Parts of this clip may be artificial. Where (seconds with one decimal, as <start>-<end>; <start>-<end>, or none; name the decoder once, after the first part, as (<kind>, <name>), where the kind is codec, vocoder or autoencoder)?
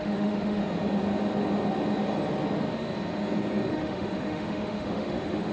0.0-0.6 (autoencoder, DAC-VAE); 3.7-5.5